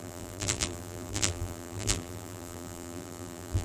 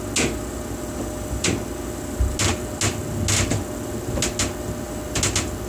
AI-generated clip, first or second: first